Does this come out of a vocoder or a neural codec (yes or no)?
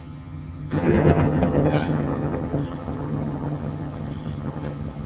yes